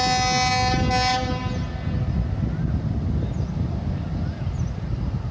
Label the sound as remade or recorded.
recorded